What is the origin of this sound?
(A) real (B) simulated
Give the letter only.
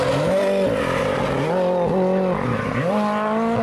A